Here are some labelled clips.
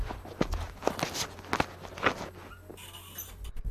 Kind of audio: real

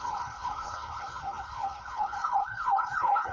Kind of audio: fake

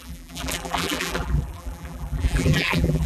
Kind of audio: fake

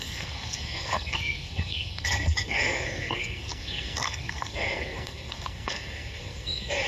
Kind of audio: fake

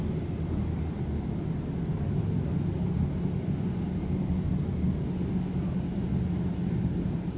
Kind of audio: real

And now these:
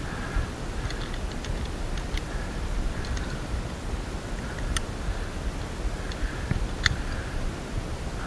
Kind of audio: real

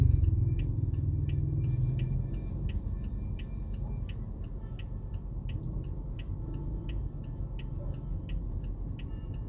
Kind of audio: real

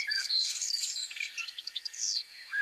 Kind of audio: fake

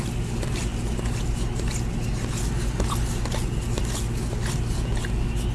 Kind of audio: real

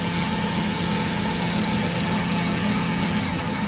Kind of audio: fake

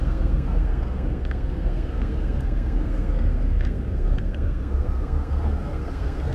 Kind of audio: fake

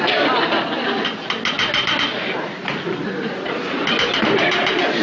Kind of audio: real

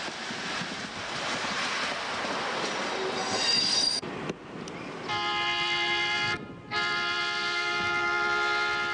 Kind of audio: real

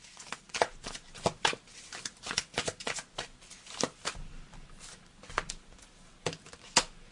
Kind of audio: real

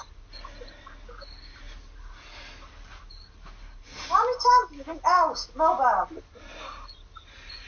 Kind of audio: real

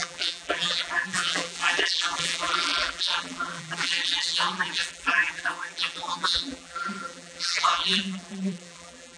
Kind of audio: fake